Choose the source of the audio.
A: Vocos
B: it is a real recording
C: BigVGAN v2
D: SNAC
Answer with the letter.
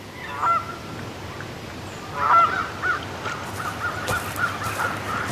B